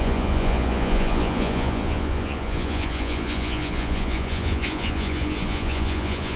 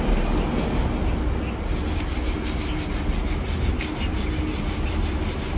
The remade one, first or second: first